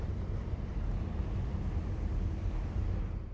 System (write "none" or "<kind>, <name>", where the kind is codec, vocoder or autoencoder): none